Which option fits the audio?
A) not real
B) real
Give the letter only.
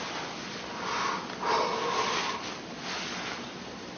B